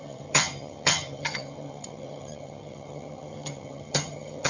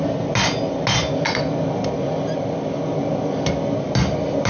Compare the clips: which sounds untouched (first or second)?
second